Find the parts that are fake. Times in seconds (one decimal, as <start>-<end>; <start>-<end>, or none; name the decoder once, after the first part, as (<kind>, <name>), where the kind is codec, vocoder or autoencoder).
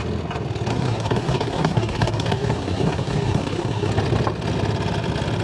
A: 0.7-3.9 (codec, SNAC)